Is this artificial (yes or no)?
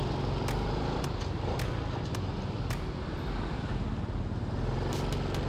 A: no